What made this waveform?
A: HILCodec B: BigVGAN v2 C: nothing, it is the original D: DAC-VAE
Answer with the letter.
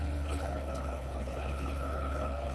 A